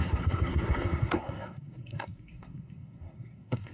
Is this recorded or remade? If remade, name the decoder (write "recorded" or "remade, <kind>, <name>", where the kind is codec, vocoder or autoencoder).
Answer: remade, codec, SNAC